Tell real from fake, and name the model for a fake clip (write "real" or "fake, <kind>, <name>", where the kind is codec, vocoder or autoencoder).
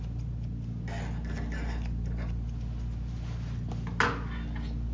real